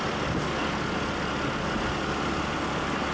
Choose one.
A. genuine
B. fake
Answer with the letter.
A